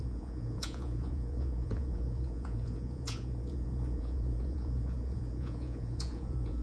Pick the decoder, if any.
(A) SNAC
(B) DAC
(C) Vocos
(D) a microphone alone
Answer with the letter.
C